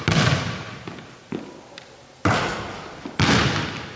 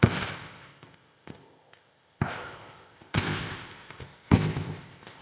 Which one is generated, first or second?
second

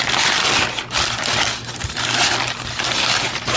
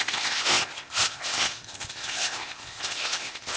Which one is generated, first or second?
second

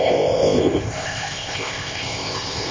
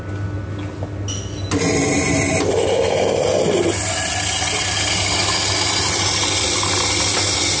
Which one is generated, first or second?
first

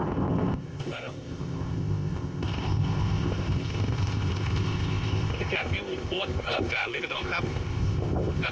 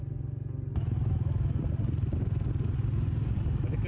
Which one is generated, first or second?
first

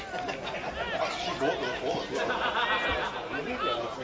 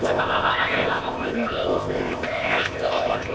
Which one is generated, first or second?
second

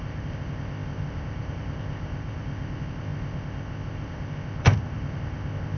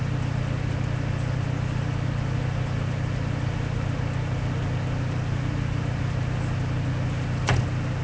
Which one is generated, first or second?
first